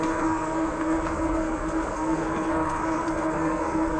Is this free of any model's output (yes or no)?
no